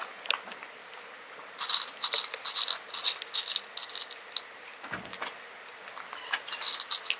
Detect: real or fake real